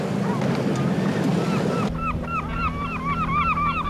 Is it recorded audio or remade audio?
recorded